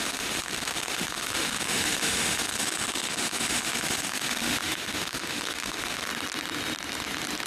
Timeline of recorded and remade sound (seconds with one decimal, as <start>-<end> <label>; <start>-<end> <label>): 0.0-6.1 remade; 6.1-7.5 recorded